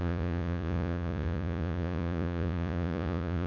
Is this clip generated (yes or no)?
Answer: yes